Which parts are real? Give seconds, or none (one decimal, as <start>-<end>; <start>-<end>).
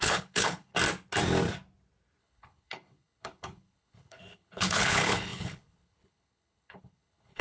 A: 0.7-2.2